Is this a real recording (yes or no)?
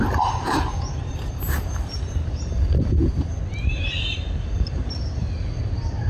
no